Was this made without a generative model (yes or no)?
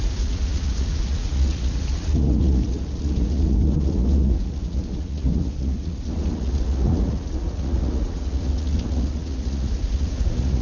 no